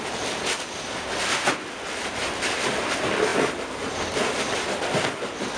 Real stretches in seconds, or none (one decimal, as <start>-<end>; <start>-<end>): 0.0-5.6